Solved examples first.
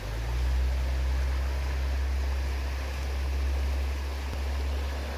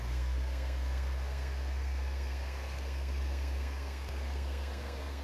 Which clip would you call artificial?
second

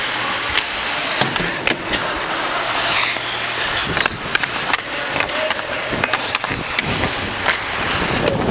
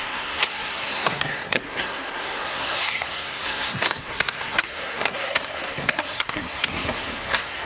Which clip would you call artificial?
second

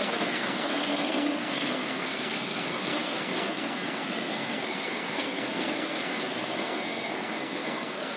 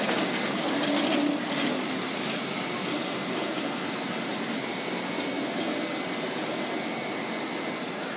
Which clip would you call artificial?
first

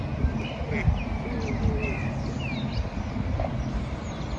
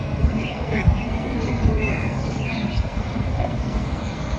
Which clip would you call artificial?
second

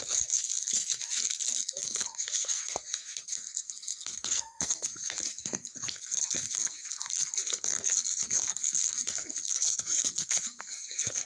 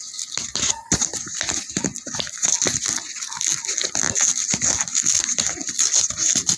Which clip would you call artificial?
first